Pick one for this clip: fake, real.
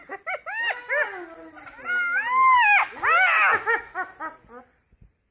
real